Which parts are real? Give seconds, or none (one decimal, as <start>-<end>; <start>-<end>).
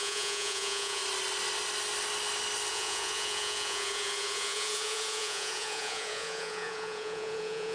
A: 1.0-2.7